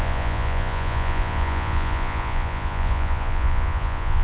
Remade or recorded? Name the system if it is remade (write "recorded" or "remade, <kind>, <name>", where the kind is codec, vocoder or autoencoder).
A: remade, vocoder, Vocos